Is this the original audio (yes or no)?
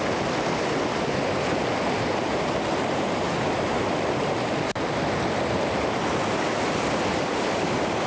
yes